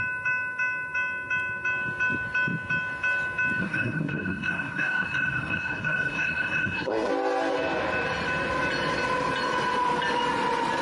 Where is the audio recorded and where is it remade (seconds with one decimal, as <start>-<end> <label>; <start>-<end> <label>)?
0.0-3.6 recorded; 3.6-7.1 remade; 7.1-10.8 recorded

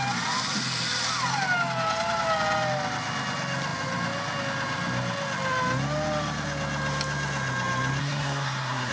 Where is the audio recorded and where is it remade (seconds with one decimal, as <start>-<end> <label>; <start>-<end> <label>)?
0.0-8.0 recorded; 8.0-8.9 remade